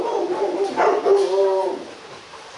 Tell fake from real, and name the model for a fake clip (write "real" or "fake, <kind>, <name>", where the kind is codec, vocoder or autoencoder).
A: fake, vocoder, BigVGAN v2